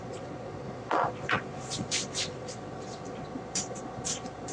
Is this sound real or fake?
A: fake